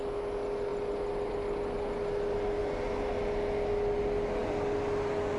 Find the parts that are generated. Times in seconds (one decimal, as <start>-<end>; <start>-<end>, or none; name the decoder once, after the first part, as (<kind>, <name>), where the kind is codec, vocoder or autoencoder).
none